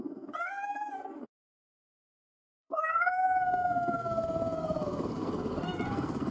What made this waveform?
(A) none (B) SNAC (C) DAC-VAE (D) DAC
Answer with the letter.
B